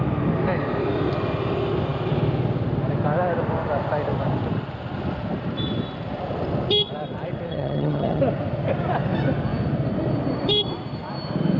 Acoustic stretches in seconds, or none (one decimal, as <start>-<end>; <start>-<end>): 0.0-7.5; 8.2-11.6